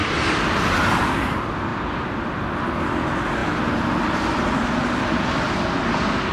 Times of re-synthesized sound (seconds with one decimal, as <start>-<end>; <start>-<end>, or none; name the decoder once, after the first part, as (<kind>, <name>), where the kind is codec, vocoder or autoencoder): none